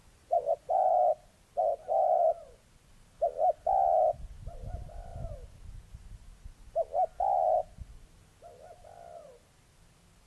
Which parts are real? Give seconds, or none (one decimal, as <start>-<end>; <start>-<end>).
0.9-1.7; 2.9-10.3

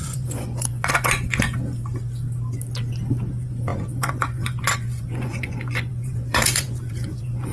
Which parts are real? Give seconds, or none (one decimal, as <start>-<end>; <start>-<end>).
1.8-3.3

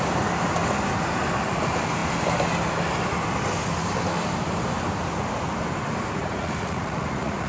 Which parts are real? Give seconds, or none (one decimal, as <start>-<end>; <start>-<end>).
0.0-6.2

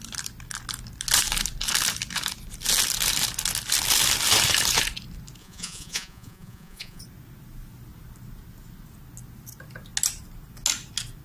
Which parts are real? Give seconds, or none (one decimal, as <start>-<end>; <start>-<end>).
0.0-5.4; 7.0-11.2

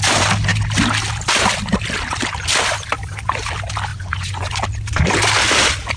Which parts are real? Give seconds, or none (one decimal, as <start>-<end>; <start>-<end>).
0.0-3.9; 4.5-6.0

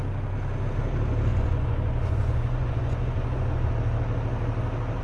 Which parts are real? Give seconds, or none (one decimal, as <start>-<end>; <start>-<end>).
0.0-1.3; 3.7-5.0

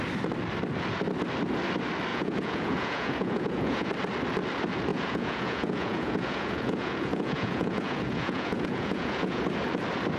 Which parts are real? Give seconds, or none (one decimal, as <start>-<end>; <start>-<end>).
0.0-2.1; 3.9-4.9; 9.4-10.2